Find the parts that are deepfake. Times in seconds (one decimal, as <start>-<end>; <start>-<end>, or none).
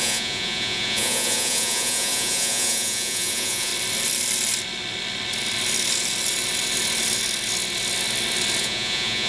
0.0-3.7; 8.6-9.3